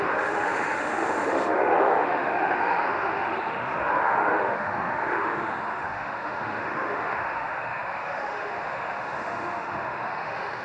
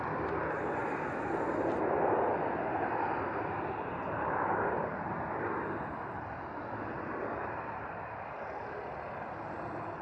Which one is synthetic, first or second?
first